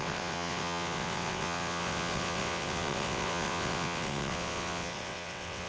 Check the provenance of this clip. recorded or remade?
remade